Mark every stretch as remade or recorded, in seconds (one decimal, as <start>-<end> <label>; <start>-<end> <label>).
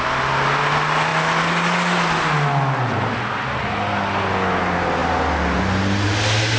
0.0-6.6 recorded